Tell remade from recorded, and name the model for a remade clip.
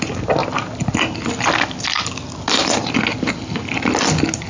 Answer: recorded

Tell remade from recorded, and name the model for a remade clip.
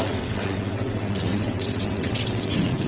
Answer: remade, vocoder, WaveNeXt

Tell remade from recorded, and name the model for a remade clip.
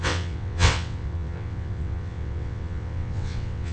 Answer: remade, vocoder, WaveNeXt